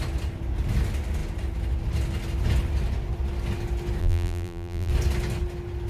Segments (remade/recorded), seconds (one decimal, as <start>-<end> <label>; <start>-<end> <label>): 0.0-4.0 recorded; 4.0-4.9 remade; 4.9-5.9 recorded